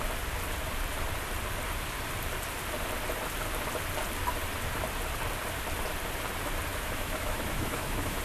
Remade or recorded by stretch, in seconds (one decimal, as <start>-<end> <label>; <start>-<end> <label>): 0.0-6.7 recorded; 6.7-8.2 remade